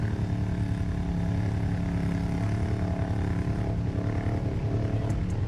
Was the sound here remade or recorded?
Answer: recorded